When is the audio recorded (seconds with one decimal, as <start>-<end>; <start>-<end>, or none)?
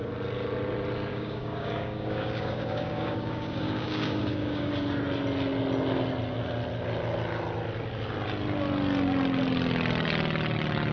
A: 0.0-1.1; 4.7-10.9